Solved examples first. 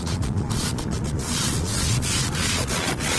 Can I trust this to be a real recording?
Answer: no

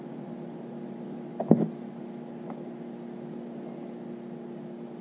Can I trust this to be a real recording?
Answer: yes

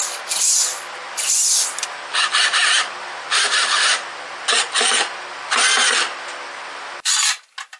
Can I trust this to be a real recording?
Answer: yes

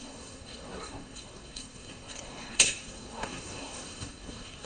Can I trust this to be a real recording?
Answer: no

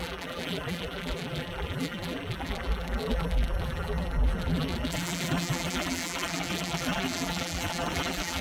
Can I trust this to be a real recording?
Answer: no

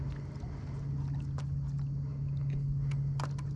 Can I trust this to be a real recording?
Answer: yes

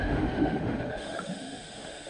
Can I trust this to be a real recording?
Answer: no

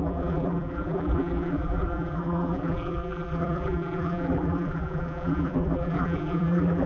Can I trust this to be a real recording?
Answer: no